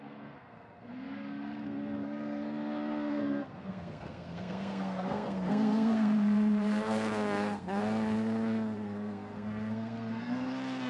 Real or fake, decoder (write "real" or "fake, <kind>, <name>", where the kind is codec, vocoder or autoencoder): fake, codec, SNAC